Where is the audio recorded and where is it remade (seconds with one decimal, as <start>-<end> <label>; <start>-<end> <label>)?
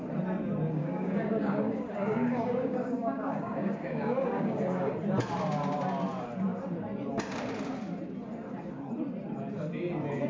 0.0-0.8 recorded; 0.8-4.9 remade; 4.9-10.3 recorded